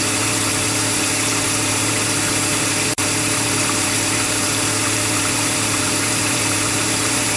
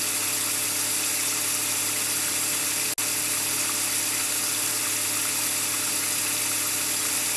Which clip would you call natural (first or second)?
second